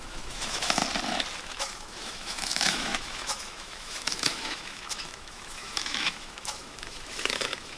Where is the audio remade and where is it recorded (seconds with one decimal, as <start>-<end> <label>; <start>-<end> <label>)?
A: 0.0-0.8 remade; 0.8-1.4 recorded; 1.4-7.8 remade